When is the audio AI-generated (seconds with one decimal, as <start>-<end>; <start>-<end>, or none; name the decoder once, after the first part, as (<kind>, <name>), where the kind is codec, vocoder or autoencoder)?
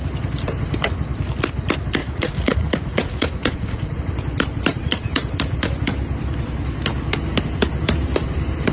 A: 2.0-4.0 (vocoder, Vocos); 4.7-5.3